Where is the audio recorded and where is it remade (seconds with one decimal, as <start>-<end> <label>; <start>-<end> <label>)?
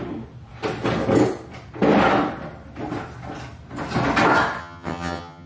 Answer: 0.0-4.6 recorded; 4.6-5.5 remade